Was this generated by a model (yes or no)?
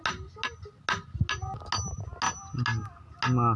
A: no